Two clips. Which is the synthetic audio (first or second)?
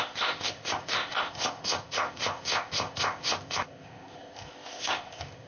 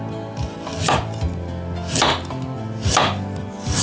first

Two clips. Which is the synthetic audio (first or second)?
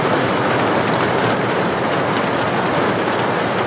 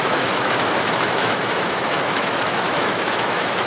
second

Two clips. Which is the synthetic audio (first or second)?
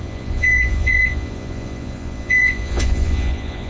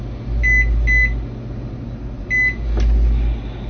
first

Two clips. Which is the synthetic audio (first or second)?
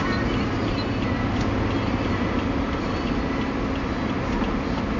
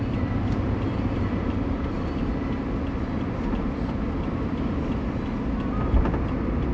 second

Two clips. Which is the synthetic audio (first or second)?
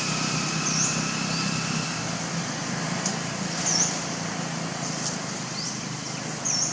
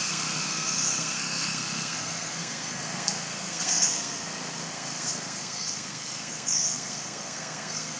second